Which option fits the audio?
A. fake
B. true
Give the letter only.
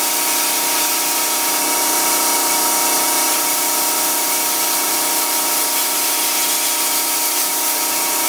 B